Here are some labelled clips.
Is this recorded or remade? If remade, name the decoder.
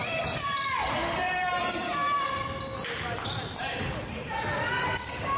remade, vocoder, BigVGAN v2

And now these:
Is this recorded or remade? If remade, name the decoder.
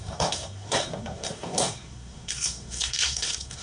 remade, codec, SNAC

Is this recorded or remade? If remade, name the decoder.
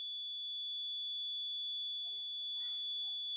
recorded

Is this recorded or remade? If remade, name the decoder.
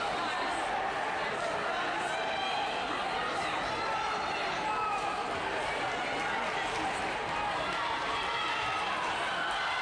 recorded